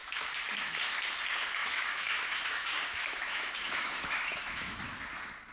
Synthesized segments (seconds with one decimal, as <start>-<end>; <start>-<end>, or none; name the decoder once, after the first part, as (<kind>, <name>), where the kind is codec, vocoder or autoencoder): 0.0-0.8 (autoencoder, DAC-VAE); 1.6-4.9